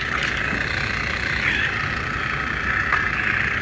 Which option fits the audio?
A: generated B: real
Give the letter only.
B